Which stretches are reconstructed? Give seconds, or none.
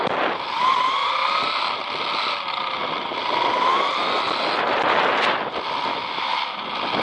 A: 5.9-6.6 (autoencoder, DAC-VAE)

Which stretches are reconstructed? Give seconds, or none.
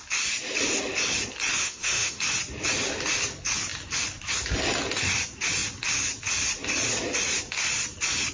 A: 1.6-2.2 (autoencoder, DAC-VAE)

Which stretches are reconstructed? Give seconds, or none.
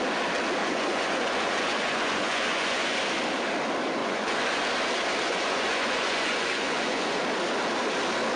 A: 0.6-3.0 (vocoder, Vocos); 4.0-4.6; 5.2-7.2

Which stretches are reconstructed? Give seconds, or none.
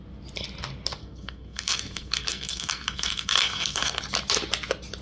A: 1.0-4.0 (codec, SNAC)